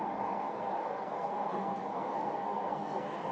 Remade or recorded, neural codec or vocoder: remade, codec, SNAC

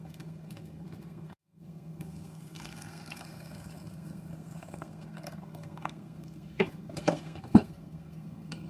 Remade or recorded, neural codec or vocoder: remade, codec, SNAC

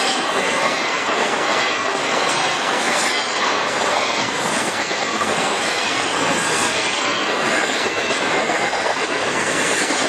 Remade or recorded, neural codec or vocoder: remade, codec, SNAC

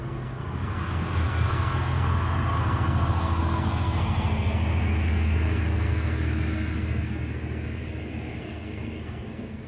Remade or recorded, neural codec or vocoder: remade, codec, SNAC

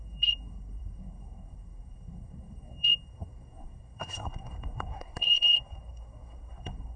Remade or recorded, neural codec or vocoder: remade, codec, SNAC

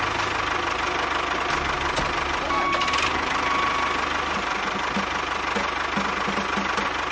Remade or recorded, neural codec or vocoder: recorded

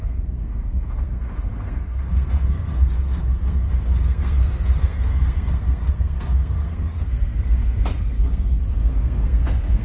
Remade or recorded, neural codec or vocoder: remade, codec, SNAC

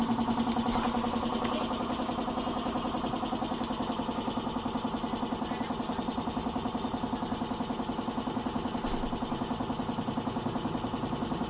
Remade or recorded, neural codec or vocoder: recorded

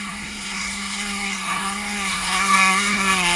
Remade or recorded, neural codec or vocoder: remade, codec, SNAC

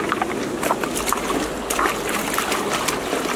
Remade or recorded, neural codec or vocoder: recorded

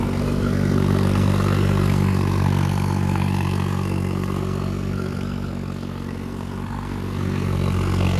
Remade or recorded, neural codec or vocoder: remade, codec, SNAC